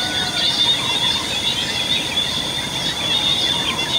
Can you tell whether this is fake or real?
real